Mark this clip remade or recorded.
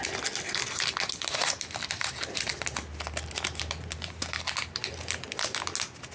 recorded